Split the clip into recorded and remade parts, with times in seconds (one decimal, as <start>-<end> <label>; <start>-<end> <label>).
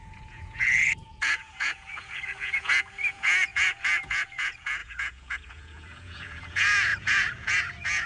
0.0-8.1 remade